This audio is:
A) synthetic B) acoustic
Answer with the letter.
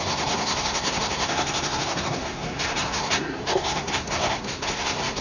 A